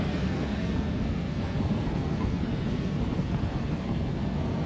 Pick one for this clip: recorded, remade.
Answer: remade